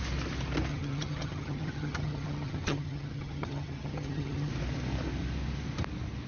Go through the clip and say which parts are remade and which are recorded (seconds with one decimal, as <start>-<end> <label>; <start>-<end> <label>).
0.0-0.7 recorded; 0.7-4.5 remade; 4.5-6.3 recorded